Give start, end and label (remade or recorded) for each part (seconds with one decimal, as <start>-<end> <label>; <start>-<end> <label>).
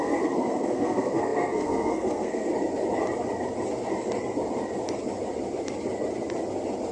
0.0-2.5 remade; 2.5-6.9 recorded